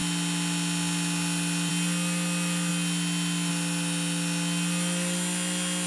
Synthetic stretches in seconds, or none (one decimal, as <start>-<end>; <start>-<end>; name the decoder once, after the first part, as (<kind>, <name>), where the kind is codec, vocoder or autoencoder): none

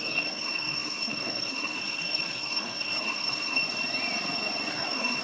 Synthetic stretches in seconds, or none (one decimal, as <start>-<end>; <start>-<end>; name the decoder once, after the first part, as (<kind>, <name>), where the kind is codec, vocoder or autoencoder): 0.0-3.6 (codec, SNAC); 4.7-5.2

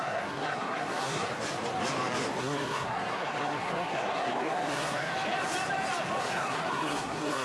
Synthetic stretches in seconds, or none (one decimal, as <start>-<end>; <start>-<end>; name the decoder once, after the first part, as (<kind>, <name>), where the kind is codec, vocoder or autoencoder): 0.0-1.3 (codec, SNAC); 2.4-5.1; 6.2-7.4

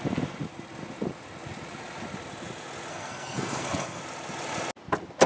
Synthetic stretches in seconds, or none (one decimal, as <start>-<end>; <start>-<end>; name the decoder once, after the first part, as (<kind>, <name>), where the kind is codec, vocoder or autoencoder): 2.9-4.0 (codec, SNAC)

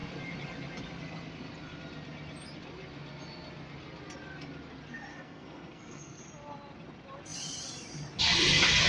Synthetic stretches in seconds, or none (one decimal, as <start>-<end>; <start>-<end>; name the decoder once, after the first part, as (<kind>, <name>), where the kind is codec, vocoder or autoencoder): 5.1-6.2 (codec, SNAC)

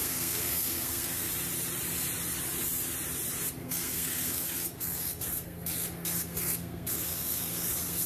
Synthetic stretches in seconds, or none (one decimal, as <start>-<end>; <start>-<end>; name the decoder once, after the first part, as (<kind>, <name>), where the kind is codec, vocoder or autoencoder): 0.0-1.3 (codec, SNAC); 3.6-8.1

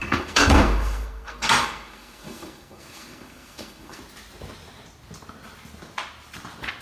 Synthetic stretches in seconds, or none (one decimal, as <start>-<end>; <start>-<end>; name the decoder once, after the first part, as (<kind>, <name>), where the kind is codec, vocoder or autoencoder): 0.0-4.0 (codec, SNAC)